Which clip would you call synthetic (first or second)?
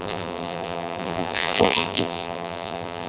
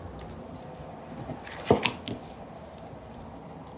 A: first